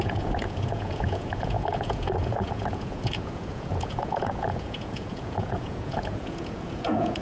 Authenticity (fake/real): fake